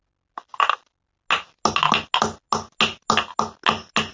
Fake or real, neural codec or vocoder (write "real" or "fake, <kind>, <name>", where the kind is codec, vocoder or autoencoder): real